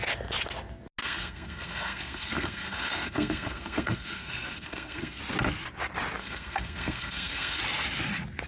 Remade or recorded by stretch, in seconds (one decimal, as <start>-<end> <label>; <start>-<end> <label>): 0.0-1.0 recorded; 1.0-5.2 remade; 5.2-6.2 recorded; 6.2-7.6 remade; 7.6-8.5 recorded